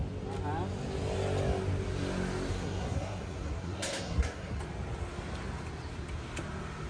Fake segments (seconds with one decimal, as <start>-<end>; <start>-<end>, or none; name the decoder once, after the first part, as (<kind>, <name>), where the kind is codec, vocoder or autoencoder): 2.5-4.6 (codec, SNAC)